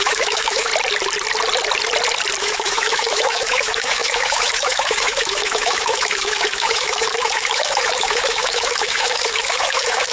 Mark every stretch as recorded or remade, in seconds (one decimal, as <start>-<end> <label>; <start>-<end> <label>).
0.0-0.7 remade; 0.7-2.4 recorded; 2.4-10.1 remade